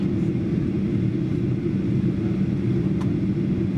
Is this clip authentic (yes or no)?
yes